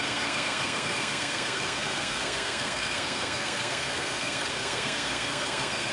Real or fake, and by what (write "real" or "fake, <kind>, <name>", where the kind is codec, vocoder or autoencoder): fake, codec, SNAC